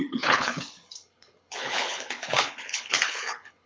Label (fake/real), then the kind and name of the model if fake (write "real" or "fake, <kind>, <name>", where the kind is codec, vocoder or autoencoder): fake, codec, HILCodec